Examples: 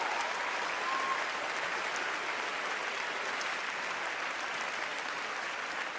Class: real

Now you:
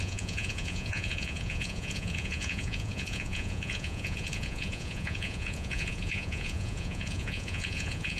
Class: fake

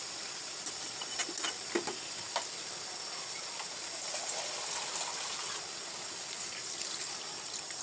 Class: real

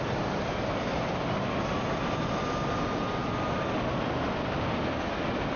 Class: real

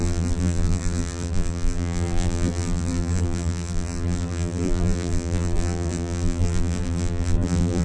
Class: fake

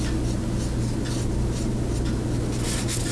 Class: real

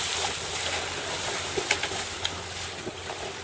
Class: real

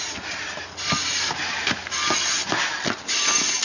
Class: real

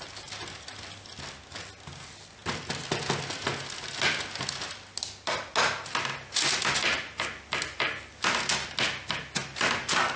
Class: real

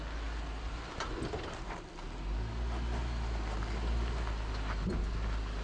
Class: real